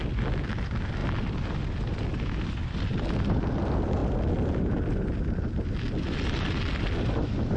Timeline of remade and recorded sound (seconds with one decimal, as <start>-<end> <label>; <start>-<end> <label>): 0.0-1.0 recorded; 1.0-1.6 remade; 1.6-4.0 recorded; 4.0-6.7 remade; 6.7-7.6 recorded